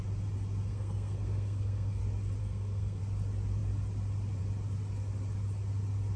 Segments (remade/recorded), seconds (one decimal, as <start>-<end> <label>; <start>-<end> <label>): 0.0-0.7 recorded; 0.7-2.0 remade; 2.0-2.4 recorded; 2.4-3.0 remade; 3.0-6.2 recorded